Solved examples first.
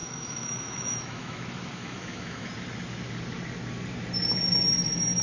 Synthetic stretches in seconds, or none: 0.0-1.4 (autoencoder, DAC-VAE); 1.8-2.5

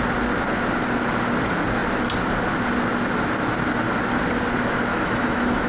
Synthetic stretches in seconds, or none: 4.9-5.7 (autoencoder, DAC-VAE)

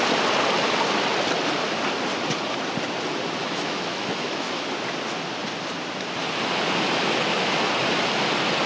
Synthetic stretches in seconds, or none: 3.4-4.6 (autoencoder, DAC-VAE)

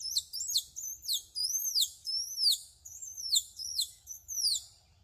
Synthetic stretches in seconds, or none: 1.4-4.3 (autoencoder, DAC-VAE)

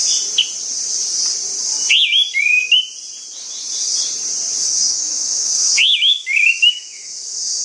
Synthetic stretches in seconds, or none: 4.6-7.6 (autoencoder, DAC-VAE)

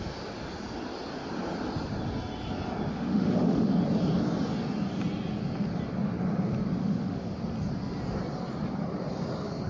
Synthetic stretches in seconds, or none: 2.9-3.7 (autoencoder, DAC-VAE); 6.8-7.4